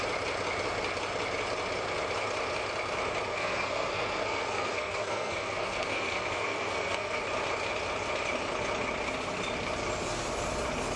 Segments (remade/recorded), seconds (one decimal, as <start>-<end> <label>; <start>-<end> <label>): 0.0-3.3 recorded; 3.3-7.2 remade; 7.2-11.0 recorded